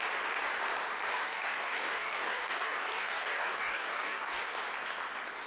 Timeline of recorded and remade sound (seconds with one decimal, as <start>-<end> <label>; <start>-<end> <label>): 0.0-1.1 recorded; 1.1-4.4 remade; 4.4-5.5 recorded